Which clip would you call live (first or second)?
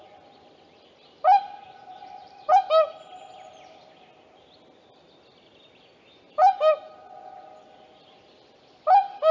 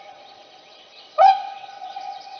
first